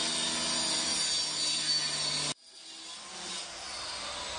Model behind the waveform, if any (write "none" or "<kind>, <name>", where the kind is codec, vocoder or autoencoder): none